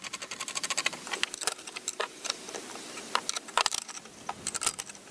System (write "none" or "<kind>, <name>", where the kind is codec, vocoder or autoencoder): none